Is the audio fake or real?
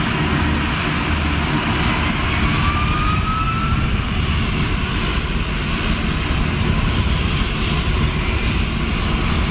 real